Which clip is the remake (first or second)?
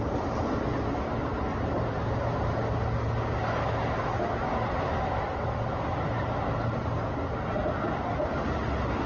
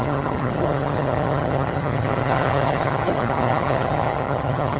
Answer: second